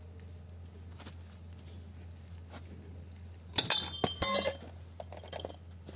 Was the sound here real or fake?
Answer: real